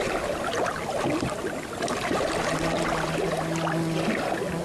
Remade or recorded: recorded